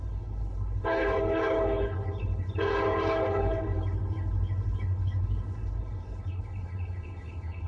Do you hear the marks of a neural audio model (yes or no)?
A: yes